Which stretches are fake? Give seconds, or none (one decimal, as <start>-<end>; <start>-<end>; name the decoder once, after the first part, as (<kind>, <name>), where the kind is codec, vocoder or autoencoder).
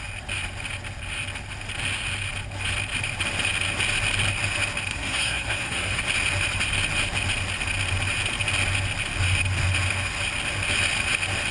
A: 4.9-6.0 (codec, SNAC)